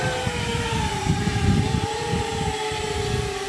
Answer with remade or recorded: remade